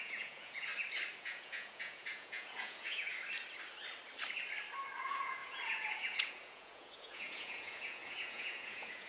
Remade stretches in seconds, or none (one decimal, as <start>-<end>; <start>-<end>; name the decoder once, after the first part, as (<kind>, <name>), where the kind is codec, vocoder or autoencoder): 0.0-0.7 (vocoder, Vocos); 1.2-3.1; 5.0-9.1